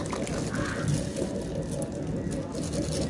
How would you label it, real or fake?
real